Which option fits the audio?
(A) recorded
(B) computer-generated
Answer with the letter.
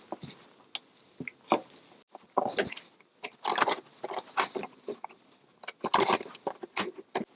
A